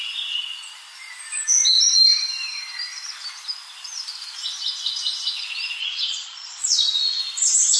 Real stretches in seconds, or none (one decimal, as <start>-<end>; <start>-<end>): 0.0-5.8; 7.2-7.8